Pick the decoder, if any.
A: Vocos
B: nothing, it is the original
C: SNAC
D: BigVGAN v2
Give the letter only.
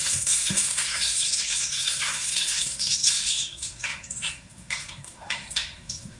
C